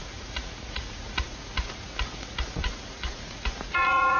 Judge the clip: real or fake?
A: fake